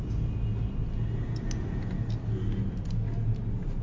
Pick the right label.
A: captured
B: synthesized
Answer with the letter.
A